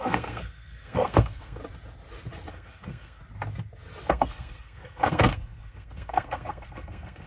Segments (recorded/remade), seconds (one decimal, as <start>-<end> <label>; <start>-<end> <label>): 0.0-1.6 remade; 1.6-2.5 recorded; 2.5-3.2 remade; 3.2-4.1 recorded; 4.1-7.3 remade